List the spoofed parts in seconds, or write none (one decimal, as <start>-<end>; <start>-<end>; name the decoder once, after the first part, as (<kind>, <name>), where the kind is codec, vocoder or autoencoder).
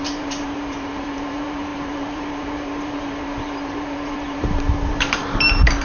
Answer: 0.0-5.8 (vocoder, BigVGAN v2)